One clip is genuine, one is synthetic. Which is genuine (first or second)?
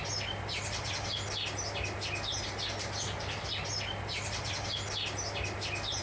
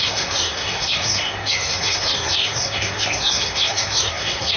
first